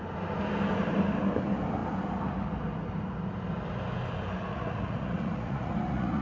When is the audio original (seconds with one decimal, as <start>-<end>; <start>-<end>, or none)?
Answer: 0.0-4.5